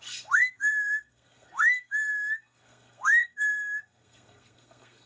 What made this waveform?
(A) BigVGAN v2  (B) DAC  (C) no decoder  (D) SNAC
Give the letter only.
D